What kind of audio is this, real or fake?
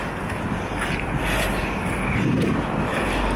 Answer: real